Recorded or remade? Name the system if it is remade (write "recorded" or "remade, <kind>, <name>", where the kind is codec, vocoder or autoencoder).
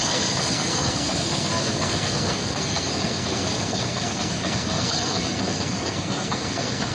remade, codec, SNAC